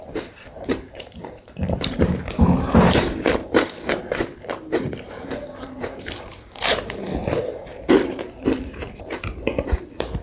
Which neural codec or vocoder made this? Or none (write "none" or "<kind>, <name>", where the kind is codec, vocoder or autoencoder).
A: vocoder, BigVGAN v2